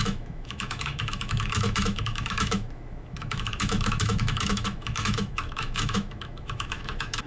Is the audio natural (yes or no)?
no